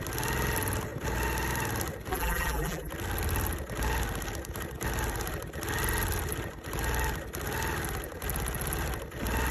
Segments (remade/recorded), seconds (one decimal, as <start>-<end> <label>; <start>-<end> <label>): 0.0-2.1 recorded; 2.1-2.9 remade; 2.9-9.5 recorded